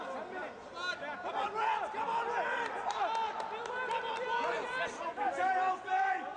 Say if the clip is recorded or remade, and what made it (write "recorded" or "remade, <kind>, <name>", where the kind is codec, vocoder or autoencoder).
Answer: recorded